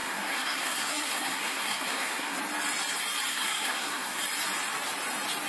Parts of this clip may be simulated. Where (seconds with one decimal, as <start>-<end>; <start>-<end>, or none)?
0.0-2.4; 3.3-4.2